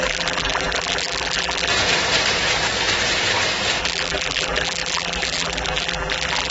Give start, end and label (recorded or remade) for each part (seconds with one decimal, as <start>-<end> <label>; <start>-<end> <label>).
0.0-1.7 remade; 1.7-3.8 recorded; 3.8-6.5 remade